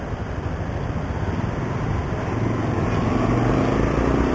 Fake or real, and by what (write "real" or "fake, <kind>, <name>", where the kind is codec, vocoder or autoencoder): real